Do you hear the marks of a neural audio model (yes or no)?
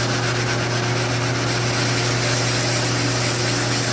no